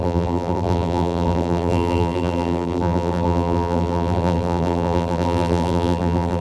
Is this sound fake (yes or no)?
yes